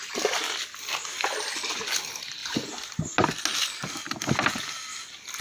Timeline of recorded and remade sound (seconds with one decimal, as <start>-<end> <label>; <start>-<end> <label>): 0.0-5.4 recorded